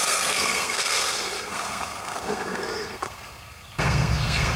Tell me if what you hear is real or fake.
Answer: fake